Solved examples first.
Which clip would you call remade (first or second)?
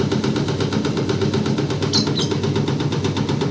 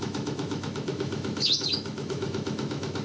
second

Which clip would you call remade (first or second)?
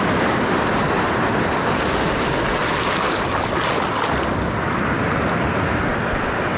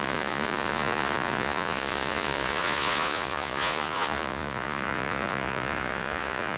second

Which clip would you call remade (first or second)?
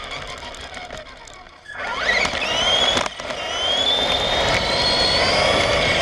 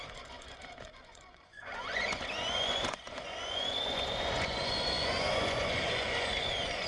second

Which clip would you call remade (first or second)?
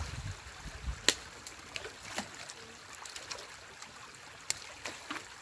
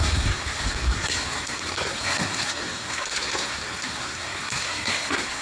second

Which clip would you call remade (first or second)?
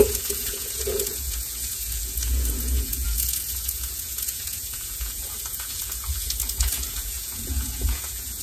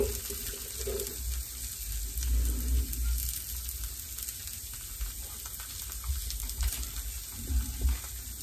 first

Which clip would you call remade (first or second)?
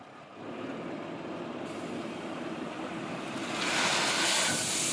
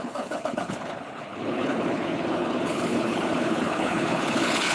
second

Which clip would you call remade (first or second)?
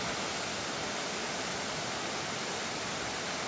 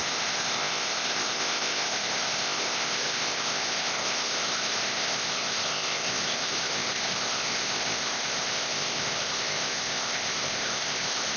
second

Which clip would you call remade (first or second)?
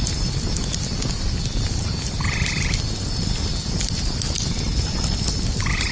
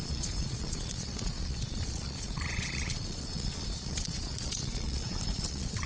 second